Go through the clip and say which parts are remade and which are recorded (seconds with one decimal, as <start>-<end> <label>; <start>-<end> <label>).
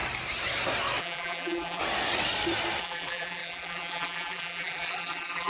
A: 0.0-1.0 recorded; 1.0-1.8 remade; 1.8-2.8 recorded; 2.8-5.5 remade